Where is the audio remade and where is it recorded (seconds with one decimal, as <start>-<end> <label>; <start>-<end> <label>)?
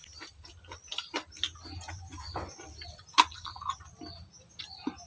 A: 0.0-5.1 recorded